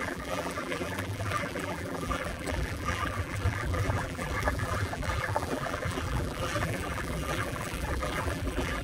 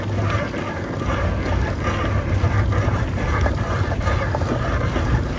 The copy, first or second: first